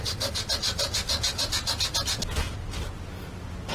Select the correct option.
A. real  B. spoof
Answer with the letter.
A